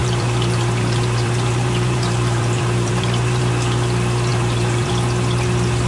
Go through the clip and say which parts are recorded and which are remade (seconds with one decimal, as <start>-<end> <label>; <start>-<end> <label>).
0.0-3.5 remade; 3.5-4.3 recorded; 4.3-4.9 remade; 4.9-5.9 recorded